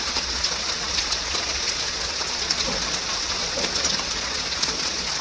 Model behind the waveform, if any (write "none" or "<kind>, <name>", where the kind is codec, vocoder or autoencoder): vocoder, Vocos